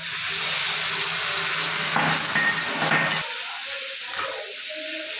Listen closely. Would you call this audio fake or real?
real